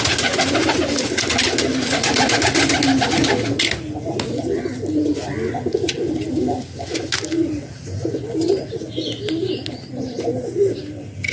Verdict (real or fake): real